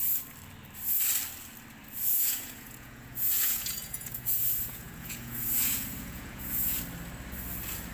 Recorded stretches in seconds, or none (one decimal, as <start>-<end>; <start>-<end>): 0.0-2.1; 6.8-7.9